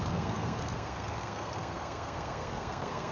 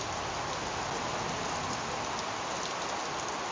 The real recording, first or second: second